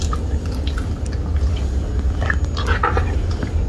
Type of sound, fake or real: real